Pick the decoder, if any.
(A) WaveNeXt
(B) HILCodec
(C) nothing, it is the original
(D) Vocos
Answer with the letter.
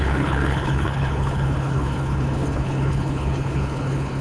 B